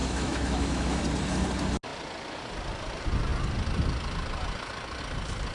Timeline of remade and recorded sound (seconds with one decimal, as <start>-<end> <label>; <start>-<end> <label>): 0.0-1.0 remade; 1.0-5.5 recorded